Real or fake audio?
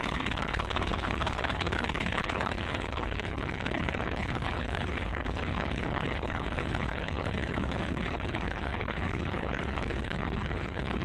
fake